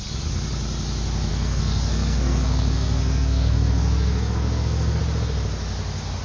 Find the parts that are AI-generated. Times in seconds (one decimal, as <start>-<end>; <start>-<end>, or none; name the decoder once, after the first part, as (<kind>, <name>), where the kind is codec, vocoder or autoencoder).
1.3-5.0 (codec, SNAC)